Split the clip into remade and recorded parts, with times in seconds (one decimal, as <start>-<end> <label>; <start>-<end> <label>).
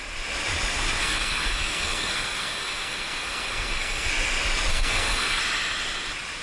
0.0-1.0 recorded; 1.0-4.1 remade; 4.1-4.7 recorded; 4.7-5.4 remade; 5.4-6.4 recorded